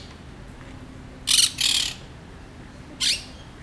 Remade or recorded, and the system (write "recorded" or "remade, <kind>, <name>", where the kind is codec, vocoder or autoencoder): recorded